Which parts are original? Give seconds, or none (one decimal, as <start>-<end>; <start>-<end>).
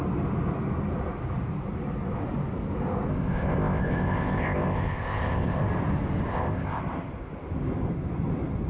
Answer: 0.0-3.1; 5.6-6.3; 6.8-8.7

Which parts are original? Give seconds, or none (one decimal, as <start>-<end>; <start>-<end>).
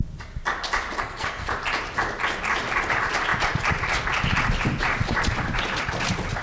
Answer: 0.0-1.0; 1.5-6.4